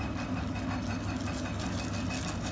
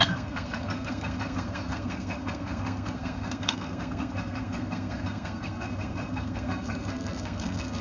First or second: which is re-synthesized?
second